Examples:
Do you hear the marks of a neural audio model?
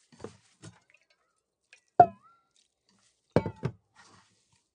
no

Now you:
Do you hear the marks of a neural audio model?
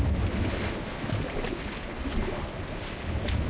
no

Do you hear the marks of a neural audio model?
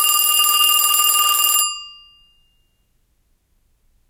no